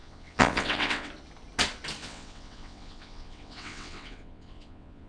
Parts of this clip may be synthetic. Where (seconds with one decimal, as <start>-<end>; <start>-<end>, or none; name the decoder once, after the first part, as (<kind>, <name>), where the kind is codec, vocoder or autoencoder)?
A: 0.0-1.1 (vocoder, WaveNeXt); 2.0-5.1